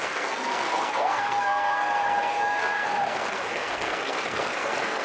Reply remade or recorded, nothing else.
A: remade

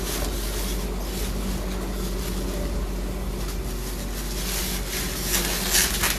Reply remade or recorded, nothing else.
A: recorded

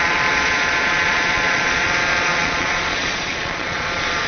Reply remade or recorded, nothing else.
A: remade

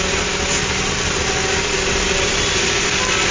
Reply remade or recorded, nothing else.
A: recorded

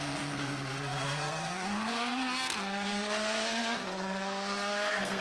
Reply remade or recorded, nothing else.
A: remade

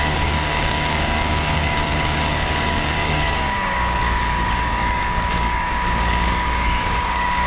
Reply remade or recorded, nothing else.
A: remade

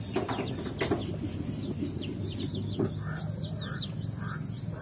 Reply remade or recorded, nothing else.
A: recorded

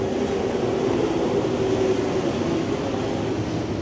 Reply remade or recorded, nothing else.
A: recorded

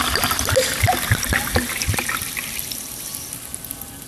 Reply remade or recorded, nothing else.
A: recorded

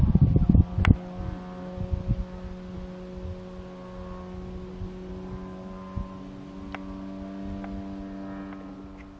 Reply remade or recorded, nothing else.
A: recorded